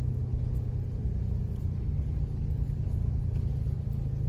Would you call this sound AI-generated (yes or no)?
no